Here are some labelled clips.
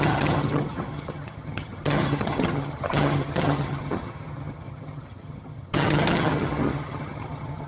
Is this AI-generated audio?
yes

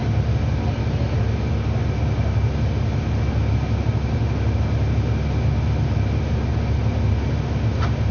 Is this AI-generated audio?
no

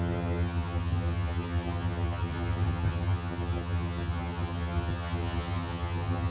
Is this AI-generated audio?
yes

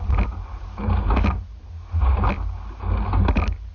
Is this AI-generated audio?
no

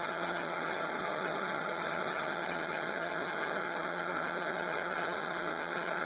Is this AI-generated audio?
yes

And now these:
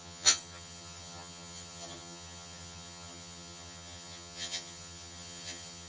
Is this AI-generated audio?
yes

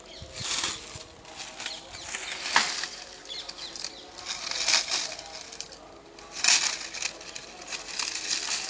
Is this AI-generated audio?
no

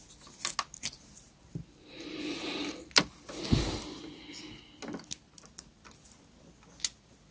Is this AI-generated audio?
no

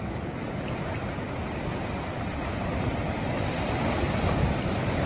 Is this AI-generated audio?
no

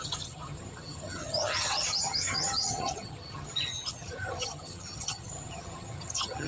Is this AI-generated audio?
yes